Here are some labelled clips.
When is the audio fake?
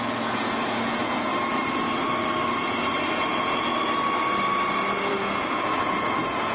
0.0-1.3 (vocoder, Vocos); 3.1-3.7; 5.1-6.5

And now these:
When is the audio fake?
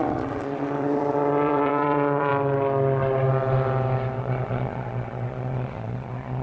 0.0-2.3 (vocoder, Vocos); 4.2-6.4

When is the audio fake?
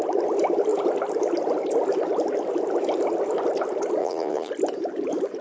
4.0-4.5 (vocoder, Vocos)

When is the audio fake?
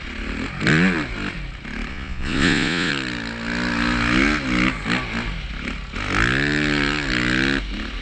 1.9-2.9 (vocoder, Vocos)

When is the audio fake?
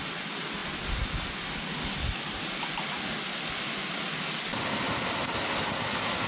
none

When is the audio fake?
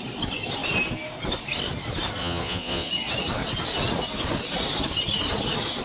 2.2-2.9 (vocoder, Vocos)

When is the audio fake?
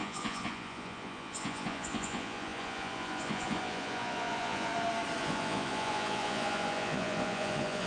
0.0-4.7 (vocoder, Vocos); 5.2-7.9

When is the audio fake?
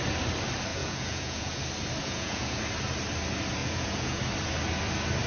0.7-1.6 (vocoder, Vocos); 2.0-2.6; 3.6-4.2